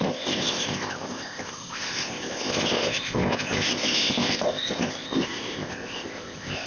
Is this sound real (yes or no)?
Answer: no